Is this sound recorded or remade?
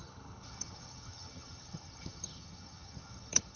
remade